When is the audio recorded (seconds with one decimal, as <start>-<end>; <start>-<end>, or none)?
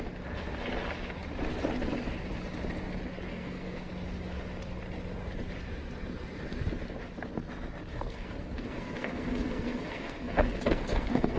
0.0-3.3; 3.9-7.9